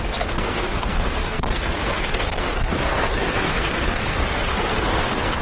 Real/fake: fake